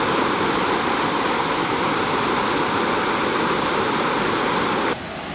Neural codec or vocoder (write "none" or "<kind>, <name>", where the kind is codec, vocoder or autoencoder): none